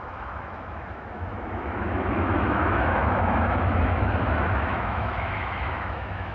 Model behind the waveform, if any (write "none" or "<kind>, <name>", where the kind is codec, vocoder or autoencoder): autoencoder, DAC-VAE